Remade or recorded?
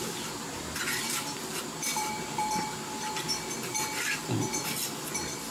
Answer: remade